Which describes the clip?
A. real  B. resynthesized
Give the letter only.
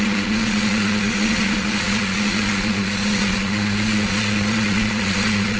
B